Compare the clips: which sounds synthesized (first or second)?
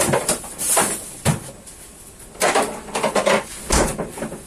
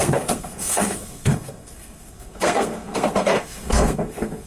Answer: second